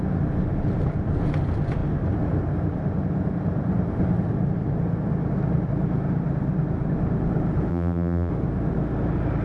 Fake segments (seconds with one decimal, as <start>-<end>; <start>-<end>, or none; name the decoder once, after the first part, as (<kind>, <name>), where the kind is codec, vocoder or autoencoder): 7.7-8.3 (vocoder, BigVGAN v2)